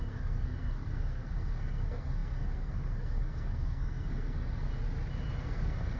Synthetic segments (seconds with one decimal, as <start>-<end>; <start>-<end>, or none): 0.0-4.7; 5.4-6.0